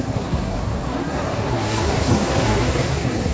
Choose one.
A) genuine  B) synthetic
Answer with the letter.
B